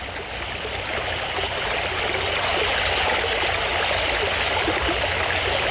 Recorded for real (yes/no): yes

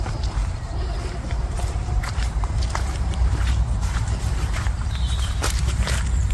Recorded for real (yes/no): no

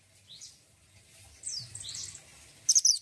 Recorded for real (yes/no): no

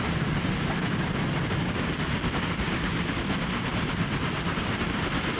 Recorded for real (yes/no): yes